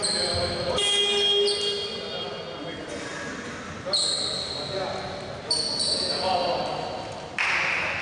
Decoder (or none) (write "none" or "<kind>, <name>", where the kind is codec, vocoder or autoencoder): none